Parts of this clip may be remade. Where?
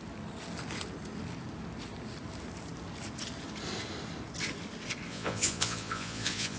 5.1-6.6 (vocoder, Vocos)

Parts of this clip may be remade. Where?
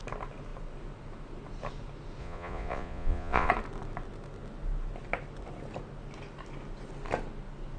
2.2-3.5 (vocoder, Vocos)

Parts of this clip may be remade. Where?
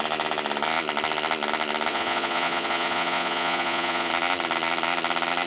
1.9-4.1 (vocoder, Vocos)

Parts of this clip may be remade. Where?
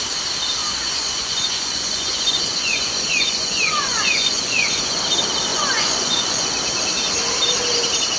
0.6-5.0 (vocoder, Vocos); 5.5-6.5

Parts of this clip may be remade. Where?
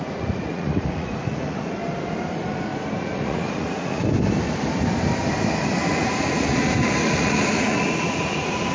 0.0-1.8 (vocoder, Vocos); 3.0-4.0; 5.9-8.7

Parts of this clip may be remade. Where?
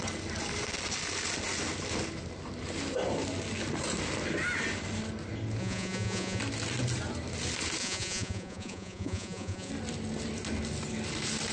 5.6-6.4 (vocoder, Vocos); 7.8-9.7